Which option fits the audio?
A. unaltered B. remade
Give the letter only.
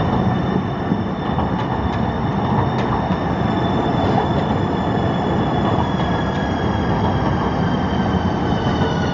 A